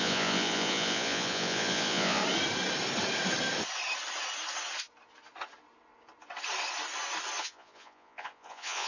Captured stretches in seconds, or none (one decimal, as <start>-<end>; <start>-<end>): 2.2-7.4

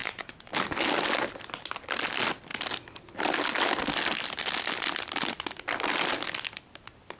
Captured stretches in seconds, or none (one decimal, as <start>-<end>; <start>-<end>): 0.5-7.2

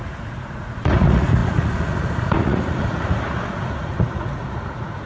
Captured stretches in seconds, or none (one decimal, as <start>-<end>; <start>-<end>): none